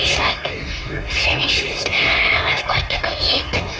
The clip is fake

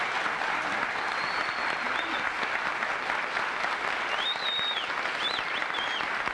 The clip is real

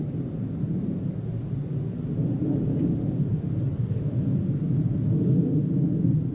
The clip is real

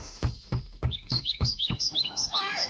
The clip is fake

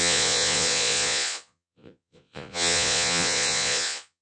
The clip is fake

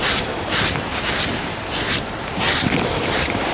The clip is real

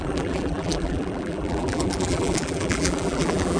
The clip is fake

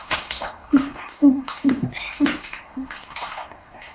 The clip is fake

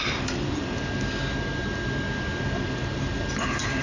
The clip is real